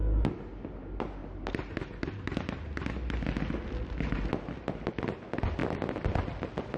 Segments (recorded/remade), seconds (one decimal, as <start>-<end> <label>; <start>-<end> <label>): 0.0-6.8 recorded